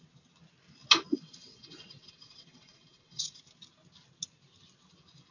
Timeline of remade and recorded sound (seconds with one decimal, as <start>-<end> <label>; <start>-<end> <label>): 0.0-1.1 recorded; 1.1-3.4 remade; 3.4-5.3 recorded